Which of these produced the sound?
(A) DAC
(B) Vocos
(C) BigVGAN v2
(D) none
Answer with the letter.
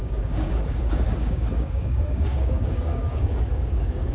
A